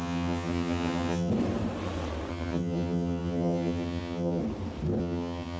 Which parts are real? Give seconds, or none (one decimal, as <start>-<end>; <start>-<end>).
1.3-2.3; 4.4-5.0